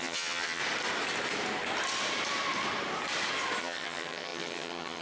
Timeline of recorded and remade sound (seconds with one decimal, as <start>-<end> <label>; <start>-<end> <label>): 0.0-0.6 remade; 0.6-3.6 recorded; 3.6-5.0 remade